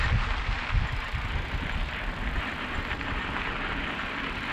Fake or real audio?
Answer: real